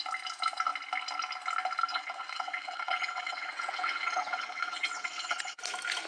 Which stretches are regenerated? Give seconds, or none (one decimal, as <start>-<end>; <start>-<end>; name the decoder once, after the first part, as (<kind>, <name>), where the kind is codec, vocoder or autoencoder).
1.9-5.6 (vocoder, WaveNeXt)